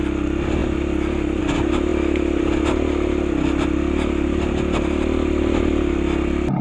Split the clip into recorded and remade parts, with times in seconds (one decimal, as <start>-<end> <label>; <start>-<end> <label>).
0.0-6.6 recorded

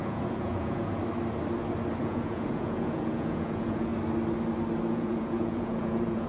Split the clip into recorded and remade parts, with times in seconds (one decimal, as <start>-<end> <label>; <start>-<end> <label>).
0.0-1.0 remade; 1.0-2.0 recorded; 2.0-3.9 remade; 3.9-4.9 recorded; 4.9-6.3 remade

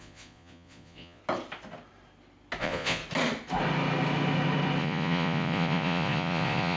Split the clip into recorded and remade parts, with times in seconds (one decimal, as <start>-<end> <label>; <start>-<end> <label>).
0.0-1.2 remade; 1.2-2.6 recorded; 2.6-3.0 remade; 3.0-4.8 recorded; 4.8-6.8 remade